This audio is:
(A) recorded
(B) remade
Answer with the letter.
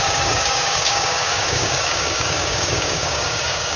B